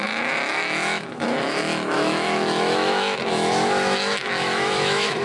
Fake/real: fake